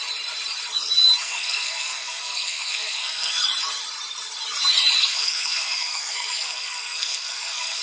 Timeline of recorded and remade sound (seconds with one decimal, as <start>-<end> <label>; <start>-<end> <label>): 0.0-1.2 recorded; 1.2-3.4 remade; 3.4-5.0 recorded; 5.0-7.8 remade